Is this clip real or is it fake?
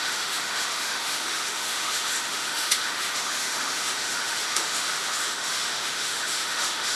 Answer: fake